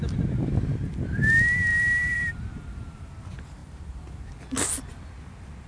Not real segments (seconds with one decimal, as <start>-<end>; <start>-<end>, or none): 1.7-3.1; 3.6-4.3